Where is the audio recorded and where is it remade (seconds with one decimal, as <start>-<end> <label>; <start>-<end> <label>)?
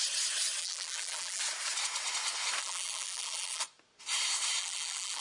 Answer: 0.0-0.6 recorded; 0.6-1.4 remade; 1.4-2.6 recorded; 2.6-3.6 remade; 3.6-4.6 recorded; 4.6-5.2 remade